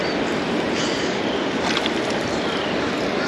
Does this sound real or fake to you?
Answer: real